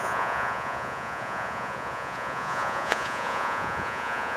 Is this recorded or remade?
remade